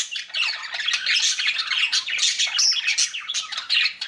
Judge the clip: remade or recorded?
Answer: recorded